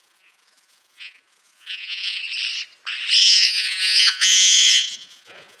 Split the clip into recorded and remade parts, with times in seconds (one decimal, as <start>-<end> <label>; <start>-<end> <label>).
0.0-2.2 remade; 2.2-3.2 recorded; 3.2-5.6 remade